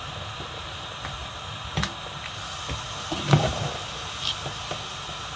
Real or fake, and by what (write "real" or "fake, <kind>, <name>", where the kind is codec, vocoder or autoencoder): real